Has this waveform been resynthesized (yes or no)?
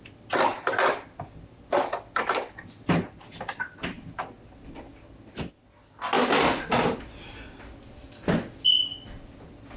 no